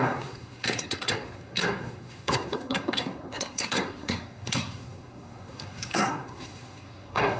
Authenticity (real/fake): fake